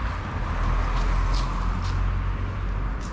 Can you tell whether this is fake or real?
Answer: real